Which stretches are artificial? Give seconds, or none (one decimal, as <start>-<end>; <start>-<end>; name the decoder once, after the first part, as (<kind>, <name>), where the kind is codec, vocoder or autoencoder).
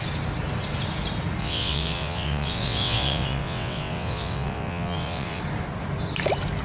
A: 1.4-5.4 (vocoder, WaveNeXt)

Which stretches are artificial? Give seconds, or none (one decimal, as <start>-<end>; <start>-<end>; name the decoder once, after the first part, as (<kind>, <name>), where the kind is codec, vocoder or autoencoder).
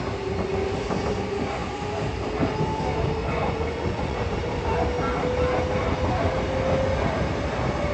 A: 3.2-4.3 (vocoder, Vocos)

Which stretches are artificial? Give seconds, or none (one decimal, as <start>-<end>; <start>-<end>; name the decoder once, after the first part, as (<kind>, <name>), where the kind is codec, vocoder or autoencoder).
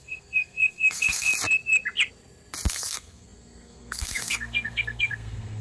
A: 0.0-1.3 (codec, SNAC); 2.7-5.6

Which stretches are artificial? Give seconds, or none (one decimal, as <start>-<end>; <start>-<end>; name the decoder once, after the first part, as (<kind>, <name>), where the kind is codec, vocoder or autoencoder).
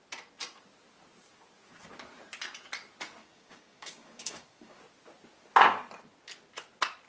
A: 3.2-4.8 (codec, DAC)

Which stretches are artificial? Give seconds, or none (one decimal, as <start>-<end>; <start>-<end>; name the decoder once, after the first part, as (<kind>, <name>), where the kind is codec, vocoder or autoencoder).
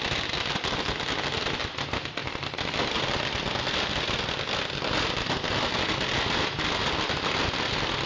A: none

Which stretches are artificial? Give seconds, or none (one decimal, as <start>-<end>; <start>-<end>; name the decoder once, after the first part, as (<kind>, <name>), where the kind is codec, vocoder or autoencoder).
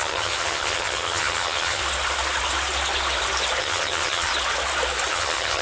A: 0.0-1.8 (vocoder, HiFi-GAN); 3.6-4.3; 5.1-5.6